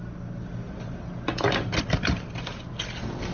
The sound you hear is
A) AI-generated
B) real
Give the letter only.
B